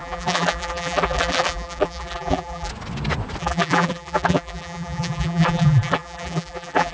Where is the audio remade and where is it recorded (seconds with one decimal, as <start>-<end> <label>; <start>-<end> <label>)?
0.0-2.7 remade; 2.7-3.4 recorded; 3.4-6.9 remade